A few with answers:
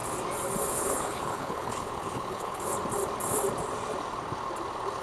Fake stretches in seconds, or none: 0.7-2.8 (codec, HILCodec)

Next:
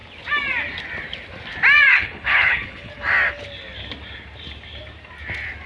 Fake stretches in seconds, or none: 1.9-2.9 (codec, HILCodec)